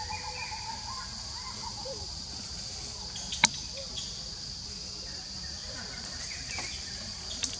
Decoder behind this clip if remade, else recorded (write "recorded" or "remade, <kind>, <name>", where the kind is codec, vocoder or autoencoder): recorded